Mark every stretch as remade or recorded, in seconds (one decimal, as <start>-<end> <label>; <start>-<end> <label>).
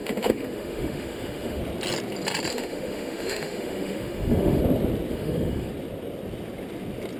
0.0-1.6 remade; 1.6-2.5 recorded; 2.5-4.6 remade; 4.6-5.1 recorded; 5.1-5.7 remade; 5.7-7.2 recorded